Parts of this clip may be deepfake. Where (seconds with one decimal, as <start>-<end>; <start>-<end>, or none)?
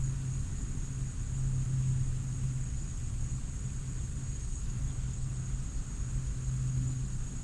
4.4-5.4